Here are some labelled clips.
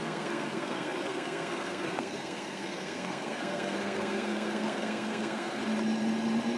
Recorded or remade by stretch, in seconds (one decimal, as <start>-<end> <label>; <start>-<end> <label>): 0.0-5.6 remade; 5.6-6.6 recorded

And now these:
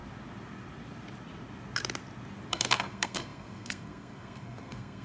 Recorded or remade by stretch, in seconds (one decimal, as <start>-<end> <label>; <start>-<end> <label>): 0.0-2.5 recorded; 2.5-5.0 remade

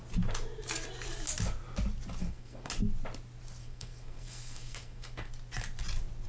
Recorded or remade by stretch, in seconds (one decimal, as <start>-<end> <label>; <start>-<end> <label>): 0.0-2.2 recorded; 2.2-2.7 remade; 2.7-3.6 recorded; 3.6-5.3 remade; 5.3-6.3 recorded

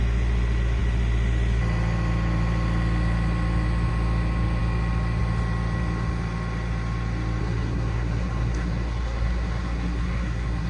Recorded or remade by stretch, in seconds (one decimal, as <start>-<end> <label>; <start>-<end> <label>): 0.0-7.4 recorded; 7.4-10.7 remade